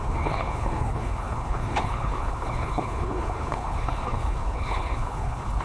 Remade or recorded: remade